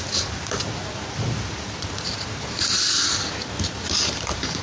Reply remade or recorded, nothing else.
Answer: recorded